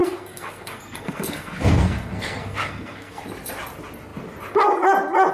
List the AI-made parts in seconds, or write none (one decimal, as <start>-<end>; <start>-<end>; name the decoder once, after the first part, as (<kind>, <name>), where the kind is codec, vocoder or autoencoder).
0.0-3.2 (codec, SNAC)